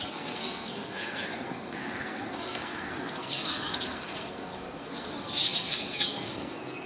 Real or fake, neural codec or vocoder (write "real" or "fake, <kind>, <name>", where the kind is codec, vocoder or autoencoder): fake, codec, SNAC